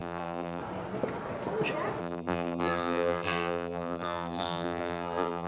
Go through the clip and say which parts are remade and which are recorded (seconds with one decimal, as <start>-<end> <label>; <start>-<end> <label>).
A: 0.0-0.6 remade; 0.6-2.0 recorded; 2.0-5.5 remade